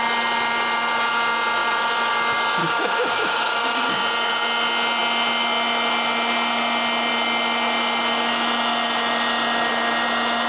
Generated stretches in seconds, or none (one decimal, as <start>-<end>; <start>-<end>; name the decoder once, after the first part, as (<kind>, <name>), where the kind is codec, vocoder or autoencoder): 2.6-3.9 (autoencoder, DAC-VAE)